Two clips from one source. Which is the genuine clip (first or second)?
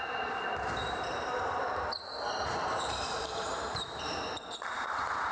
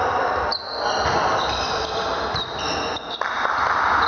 second